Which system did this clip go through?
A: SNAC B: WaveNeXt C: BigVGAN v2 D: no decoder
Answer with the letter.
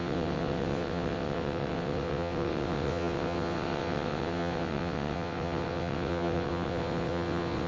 B